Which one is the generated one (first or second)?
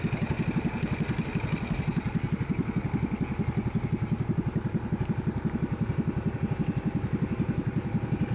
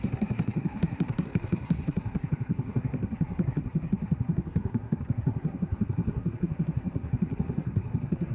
second